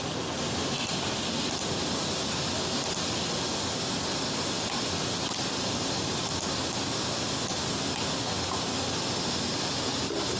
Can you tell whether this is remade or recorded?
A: recorded